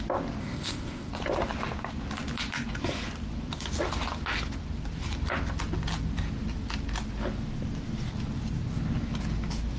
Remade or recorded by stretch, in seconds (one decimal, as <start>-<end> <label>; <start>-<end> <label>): 0.0-0.4 recorded; 0.4-1.1 remade; 1.1-9.8 recorded